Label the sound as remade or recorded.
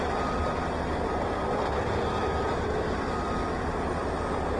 remade